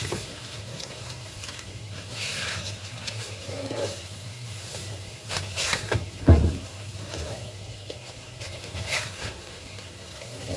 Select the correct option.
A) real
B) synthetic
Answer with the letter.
B